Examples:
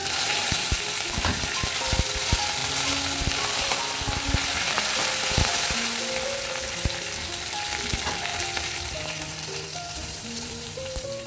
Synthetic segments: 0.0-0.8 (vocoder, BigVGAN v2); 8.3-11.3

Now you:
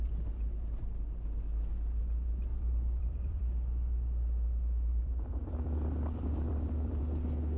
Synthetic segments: 2.5-3.4 (vocoder, BigVGAN v2); 4.9-7.0

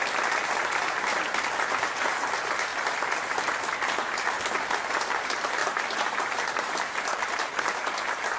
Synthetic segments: 0.0-1.1 (vocoder, BigVGAN v2); 1.7-2.7; 5.0-5.6; 6.2-8.4

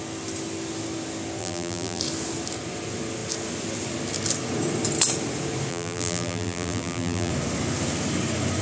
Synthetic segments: 1.4-2.0 (vocoder, BigVGAN v2); 5.7-7.3